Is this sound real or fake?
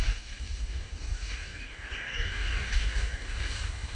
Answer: fake